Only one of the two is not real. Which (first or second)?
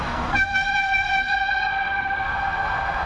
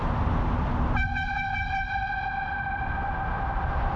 first